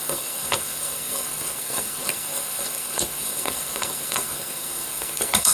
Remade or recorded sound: remade